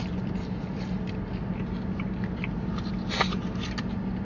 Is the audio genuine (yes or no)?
yes